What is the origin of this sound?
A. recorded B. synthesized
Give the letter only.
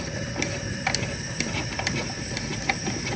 A